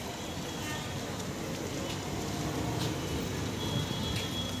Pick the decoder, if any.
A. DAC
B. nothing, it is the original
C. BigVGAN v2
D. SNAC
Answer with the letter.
B